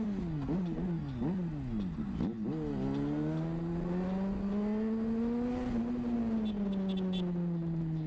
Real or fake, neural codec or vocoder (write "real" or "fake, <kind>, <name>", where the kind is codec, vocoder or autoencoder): real